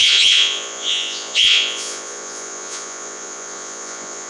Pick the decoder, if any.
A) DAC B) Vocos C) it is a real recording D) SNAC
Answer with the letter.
B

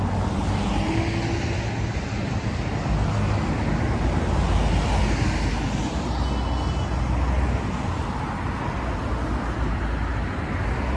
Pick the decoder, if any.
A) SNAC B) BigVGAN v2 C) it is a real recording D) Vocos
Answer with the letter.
C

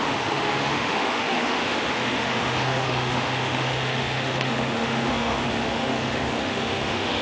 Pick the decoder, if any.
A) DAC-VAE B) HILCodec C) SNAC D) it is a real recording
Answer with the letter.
A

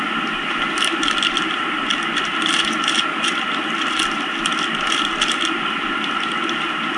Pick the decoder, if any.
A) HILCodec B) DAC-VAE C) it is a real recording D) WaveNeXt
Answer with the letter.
C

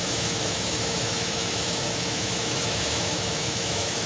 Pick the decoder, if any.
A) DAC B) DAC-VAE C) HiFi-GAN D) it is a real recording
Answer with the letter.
B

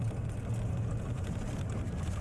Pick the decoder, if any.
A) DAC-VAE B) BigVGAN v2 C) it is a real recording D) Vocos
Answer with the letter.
C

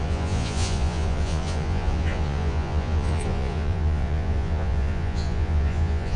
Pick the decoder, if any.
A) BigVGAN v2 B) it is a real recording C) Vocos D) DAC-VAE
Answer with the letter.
C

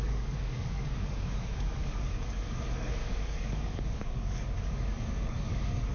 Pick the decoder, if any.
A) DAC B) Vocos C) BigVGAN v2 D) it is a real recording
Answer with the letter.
A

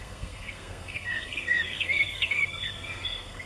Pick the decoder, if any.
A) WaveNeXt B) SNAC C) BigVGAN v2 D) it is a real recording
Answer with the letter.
B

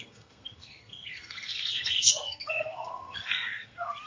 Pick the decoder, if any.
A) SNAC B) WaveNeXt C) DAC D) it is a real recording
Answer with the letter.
A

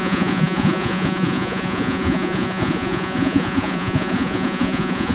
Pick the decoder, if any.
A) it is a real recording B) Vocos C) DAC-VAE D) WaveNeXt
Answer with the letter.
B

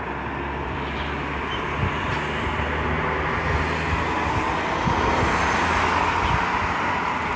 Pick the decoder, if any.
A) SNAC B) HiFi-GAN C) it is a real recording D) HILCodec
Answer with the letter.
C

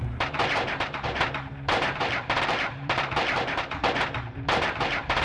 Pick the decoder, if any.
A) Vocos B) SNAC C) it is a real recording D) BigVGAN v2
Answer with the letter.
D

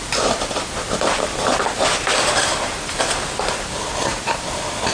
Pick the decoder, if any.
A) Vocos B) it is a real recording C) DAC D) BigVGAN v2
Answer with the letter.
D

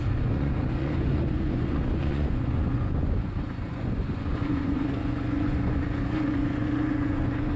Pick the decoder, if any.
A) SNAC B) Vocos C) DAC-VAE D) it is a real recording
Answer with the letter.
B